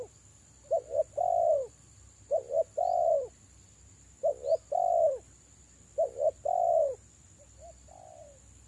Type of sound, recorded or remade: recorded